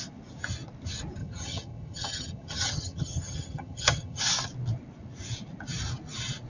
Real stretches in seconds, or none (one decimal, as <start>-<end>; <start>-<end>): 0.0-1.2; 4.2-6.5